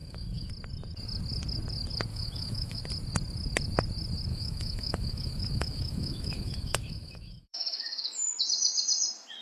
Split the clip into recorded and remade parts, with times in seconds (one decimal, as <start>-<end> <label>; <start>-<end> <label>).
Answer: 0.0-0.5 remade; 0.5-2.1 recorded; 2.1-2.8 remade; 2.8-4.3 recorded; 4.3-8.4 remade; 8.4-9.4 recorded